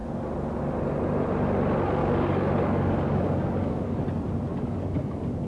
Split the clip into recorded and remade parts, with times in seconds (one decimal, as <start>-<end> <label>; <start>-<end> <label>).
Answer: 0.0-2.0 recorded; 2.0-4.0 remade; 4.0-4.5 recorded; 4.5-5.5 remade